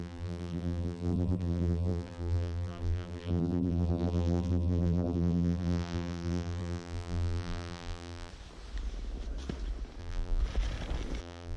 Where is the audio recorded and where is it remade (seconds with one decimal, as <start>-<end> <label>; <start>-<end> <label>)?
0.0-8.3 remade; 8.3-10.0 recorded; 10.0-10.4 remade; 10.4-11.2 recorded; 11.2-11.6 remade